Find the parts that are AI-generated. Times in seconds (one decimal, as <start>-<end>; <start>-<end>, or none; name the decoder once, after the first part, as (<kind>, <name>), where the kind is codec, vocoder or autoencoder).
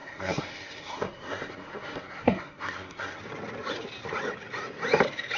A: 0.0-3.2 (codec, SNAC)